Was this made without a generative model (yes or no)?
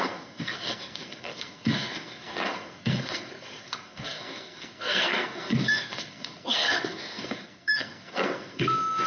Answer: no